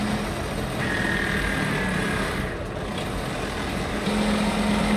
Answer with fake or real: real